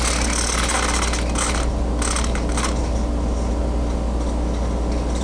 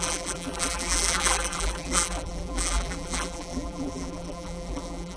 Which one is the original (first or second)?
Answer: first